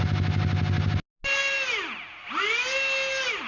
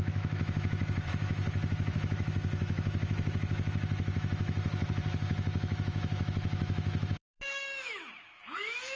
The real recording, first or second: first